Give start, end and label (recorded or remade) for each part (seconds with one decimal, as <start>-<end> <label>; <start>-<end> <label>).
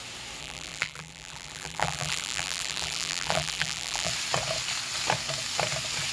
0.0-0.4 recorded; 0.4-4.1 remade; 4.1-6.1 recorded